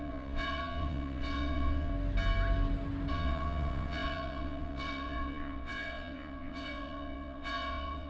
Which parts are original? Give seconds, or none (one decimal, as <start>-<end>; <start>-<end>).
1.9-3.1